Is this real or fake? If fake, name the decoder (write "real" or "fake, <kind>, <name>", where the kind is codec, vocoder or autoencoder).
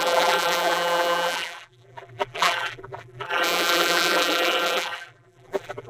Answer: fake, vocoder, BigVGAN v2